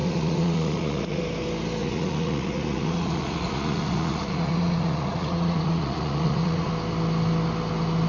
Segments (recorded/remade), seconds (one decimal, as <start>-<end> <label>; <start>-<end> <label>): 0.0-1.2 remade; 1.2-1.8 recorded; 1.8-6.7 remade; 6.7-8.1 recorded